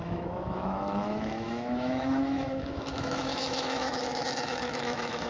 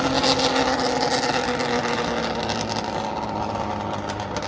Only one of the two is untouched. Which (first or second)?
second